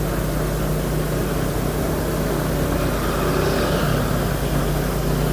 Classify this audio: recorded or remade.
recorded